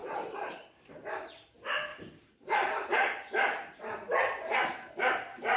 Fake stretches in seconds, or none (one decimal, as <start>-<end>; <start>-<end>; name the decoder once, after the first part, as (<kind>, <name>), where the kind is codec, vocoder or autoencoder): 0.0-1.1 (vocoder, BigVGAN v2); 1.9-5.6